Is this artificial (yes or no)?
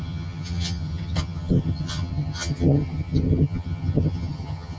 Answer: yes